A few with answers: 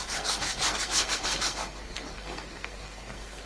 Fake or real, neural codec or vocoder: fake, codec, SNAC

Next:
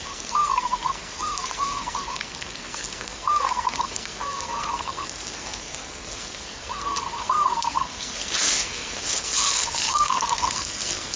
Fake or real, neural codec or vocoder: fake, codec, SNAC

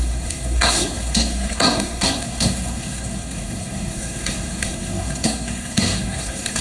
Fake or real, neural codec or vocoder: fake, codec, SNAC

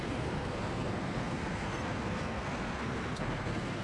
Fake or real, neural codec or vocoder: fake, codec, SNAC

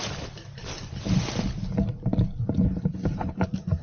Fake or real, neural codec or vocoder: real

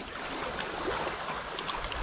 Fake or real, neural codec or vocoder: real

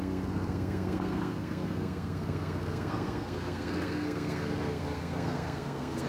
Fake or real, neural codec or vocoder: fake, codec, SNAC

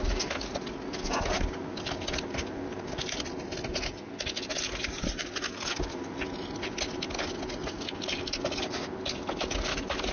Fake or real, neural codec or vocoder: real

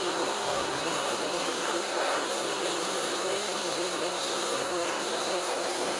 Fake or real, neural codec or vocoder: fake, codec, SNAC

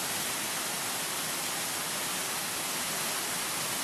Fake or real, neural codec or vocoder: real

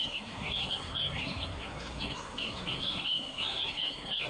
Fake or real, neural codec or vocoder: fake, codec, SNAC